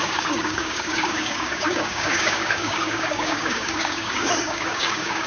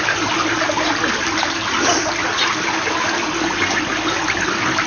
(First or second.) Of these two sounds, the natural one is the second